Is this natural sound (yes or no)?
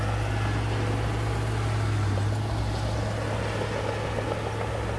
yes